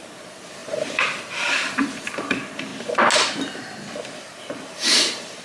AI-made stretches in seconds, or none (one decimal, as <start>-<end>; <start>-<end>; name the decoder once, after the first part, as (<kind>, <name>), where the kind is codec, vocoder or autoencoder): 0.0-2.7 (vocoder, BigVGAN v2); 4.4-5.4